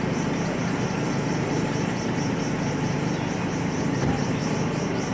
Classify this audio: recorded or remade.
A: remade